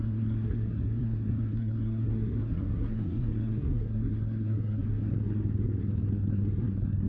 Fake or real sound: fake